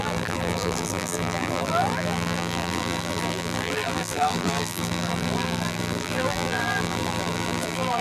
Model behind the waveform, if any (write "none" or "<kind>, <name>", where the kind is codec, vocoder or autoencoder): vocoder, BigVGAN v2